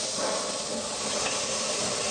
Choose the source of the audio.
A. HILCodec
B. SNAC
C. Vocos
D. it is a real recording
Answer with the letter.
D